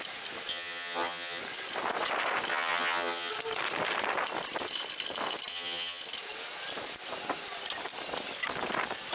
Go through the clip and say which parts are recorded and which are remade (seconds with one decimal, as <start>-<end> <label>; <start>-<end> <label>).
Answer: 0.0-0.5 recorded; 0.5-1.4 remade; 1.4-2.5 recorded; 2.5-3.3 remade; 3.3-5.5 recorded; 5.5-6.0 remade; 6.0-9.1 recorded